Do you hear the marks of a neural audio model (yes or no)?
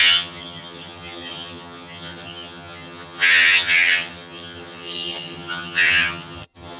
yes